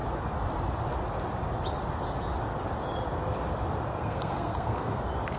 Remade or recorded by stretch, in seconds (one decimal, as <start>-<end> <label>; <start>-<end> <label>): 0.0-3.9 recorded; 3.9-5.0 remade; 5.0-5.4 recorded